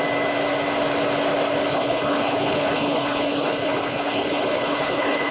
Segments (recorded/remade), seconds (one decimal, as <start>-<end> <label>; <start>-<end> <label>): 0.0-1.7 recorded; 1.7-5.3 remade